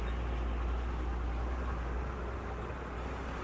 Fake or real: real